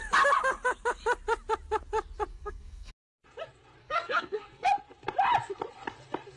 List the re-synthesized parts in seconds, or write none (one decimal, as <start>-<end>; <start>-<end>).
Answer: 2.3-2.9; 3.8-4.7